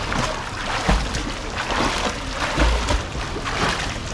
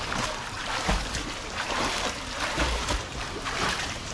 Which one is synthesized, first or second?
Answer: second